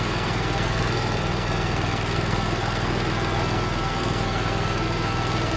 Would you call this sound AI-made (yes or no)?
yes